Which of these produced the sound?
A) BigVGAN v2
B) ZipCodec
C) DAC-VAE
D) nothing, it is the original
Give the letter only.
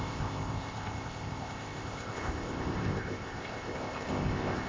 B